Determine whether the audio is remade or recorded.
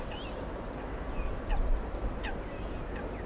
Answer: recorded